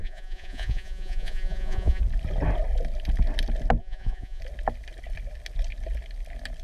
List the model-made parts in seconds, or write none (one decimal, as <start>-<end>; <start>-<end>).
0.0-2.0; 3.8-4.4